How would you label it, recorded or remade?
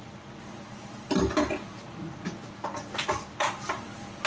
recorded